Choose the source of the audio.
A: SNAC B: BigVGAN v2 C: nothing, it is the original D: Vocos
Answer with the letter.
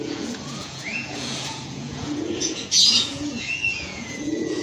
D